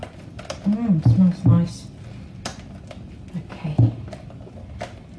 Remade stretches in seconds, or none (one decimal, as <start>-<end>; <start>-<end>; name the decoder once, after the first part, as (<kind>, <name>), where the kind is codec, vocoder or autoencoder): none